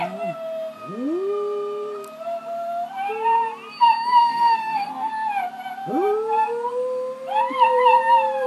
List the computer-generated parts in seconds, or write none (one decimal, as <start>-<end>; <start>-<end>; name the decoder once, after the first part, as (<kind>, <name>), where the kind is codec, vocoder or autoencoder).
4.3-5.1 (codec, DAC)